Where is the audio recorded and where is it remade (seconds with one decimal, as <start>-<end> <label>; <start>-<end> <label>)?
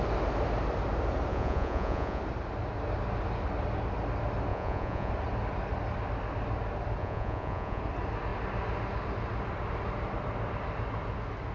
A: 0.0-1.3 recorded; 1.3-2.2 remade; 2.2-4.5 recorded; 4.5-5.1 remade; 5.1-7.0 recorded; 7.0-7.8 remade; 7.8-11.5 recorded